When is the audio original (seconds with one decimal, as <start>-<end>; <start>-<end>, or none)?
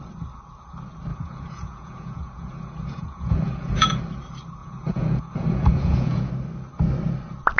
0.0-1.1; 4.0-4.6; 6.3-7.6